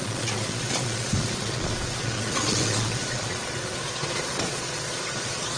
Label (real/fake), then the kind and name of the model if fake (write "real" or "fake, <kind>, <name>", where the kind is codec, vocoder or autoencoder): fake, vocoder, Vocos